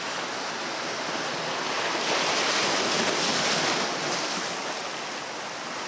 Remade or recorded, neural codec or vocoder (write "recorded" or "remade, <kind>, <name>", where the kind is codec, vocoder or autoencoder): recorded